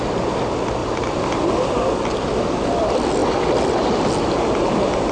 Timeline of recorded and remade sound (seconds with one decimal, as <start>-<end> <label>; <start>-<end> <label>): 0.0-0.8 recorded; 0.8-1.5 remade; 1.5-5.1 recorded